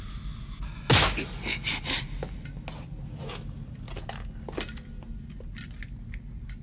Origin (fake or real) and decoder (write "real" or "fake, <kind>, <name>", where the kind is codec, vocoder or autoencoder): real